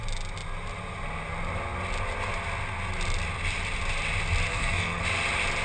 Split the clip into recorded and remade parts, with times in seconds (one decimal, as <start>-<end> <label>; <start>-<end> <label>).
0.0-4.5 recorded; 4.5-5.0 remade; 5.0-5.6 recorded